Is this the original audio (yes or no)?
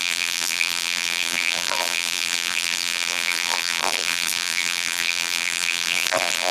no